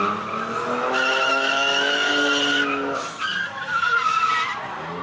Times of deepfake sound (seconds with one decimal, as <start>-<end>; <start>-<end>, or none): 1.3-2.1; 3.7-4.3